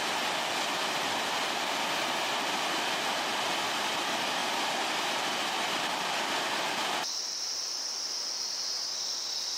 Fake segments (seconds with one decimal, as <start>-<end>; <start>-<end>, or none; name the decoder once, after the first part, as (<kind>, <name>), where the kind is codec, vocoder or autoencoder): 4.4-8.6 (vocoder, BigVGAN v2)